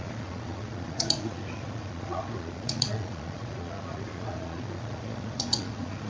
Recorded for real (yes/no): no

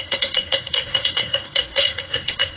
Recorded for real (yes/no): no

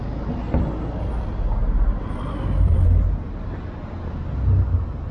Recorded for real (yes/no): yes